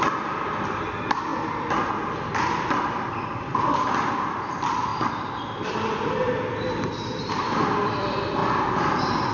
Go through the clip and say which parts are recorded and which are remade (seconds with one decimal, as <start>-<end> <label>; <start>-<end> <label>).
0.0-1.3 remade; 1.3-2.3 recorded; 2.3-4.9 remade; 4.9-7.3 recorded; 7.3-8.4 remade; 8.4-9.3 recorded